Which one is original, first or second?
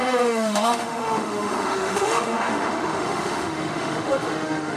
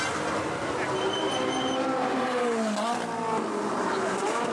second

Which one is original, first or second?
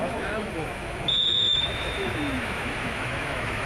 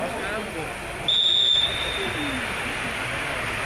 second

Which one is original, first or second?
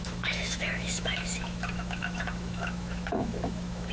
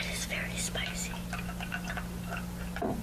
second